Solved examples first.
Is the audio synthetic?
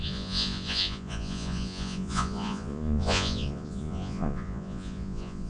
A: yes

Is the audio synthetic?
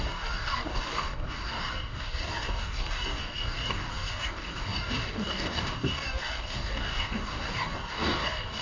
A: yes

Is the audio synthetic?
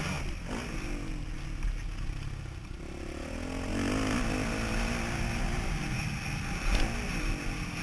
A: no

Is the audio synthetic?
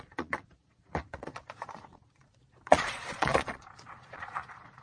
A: yes